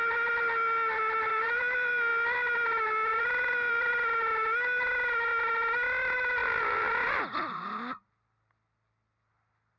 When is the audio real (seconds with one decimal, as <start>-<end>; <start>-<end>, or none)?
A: 0.0-1.3; 2.1-3.1; 3.9-6.4; 7.2-9.8